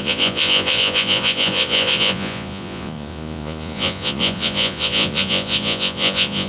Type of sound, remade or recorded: remade